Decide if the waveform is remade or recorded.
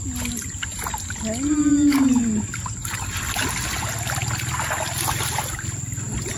recorded